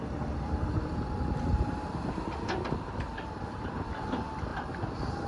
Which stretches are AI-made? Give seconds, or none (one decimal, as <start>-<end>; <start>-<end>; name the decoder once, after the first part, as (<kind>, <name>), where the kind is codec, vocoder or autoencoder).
0.0-4.5 (vocoder, BigVGAN v2)